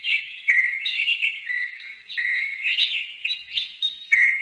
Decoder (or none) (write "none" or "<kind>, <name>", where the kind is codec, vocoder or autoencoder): none